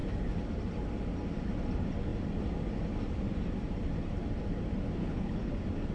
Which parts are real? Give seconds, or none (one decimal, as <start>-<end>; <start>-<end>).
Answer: 0.0-5.0; 5.5-5.9